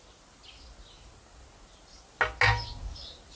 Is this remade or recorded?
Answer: recorded